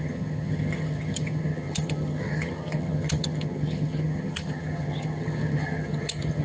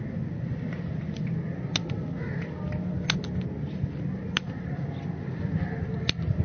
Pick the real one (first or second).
second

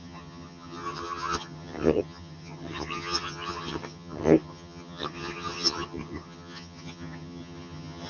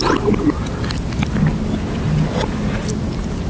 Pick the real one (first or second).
second